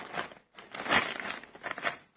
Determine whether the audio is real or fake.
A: real